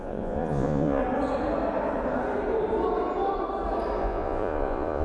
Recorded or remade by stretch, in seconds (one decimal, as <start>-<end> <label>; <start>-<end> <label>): 0.0-1.0 remade; 1.0-4.0 recorded; 4.0-5.0 remade